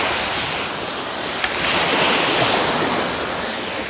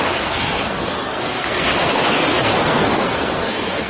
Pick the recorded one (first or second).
first